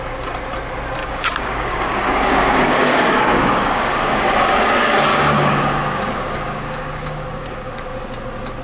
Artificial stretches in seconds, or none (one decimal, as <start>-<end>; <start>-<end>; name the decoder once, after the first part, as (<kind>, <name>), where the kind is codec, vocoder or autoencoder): 1.0-4.5 (codec, DAC); 5.1-7.8